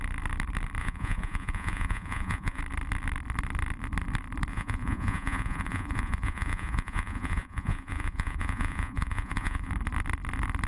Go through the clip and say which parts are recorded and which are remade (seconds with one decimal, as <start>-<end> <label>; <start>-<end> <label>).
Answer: 0.0-0.8 recorded; 0.8-2.6 remade; 2.6-4.5 recorded; 4.5-9.7 remade; 9.7-10.7 recorded